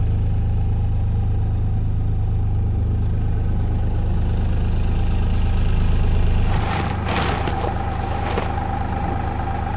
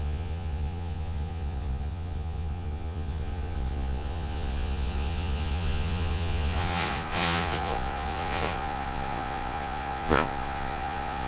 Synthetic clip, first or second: second